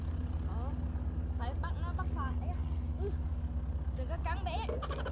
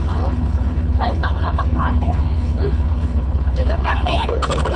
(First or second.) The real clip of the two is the first